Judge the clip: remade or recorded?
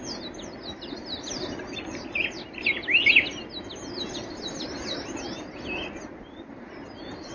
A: recorded